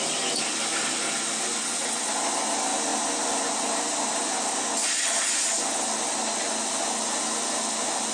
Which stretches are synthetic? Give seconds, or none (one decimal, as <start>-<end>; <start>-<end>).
1.6-2.1